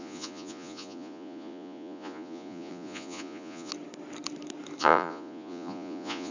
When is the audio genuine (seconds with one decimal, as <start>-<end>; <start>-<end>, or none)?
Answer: 3.7-4.8